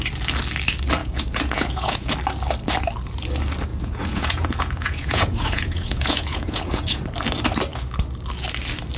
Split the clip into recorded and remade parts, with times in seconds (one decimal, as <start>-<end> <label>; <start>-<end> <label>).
0.0-1.0 recorded; 1.0-2.1 remade; 2.1-3.7 recorded; 3.7-7.0 remade; 7.0-9.0 recorded